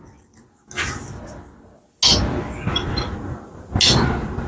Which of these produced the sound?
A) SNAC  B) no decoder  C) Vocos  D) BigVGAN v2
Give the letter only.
B